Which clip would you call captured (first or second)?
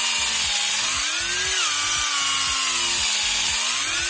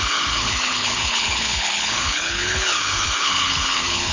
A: first